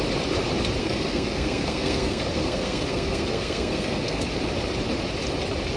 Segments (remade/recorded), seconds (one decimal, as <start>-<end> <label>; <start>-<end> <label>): 0.0-0.8 recorded; 0.8-4.3 remade; 4.3-5.8 recorded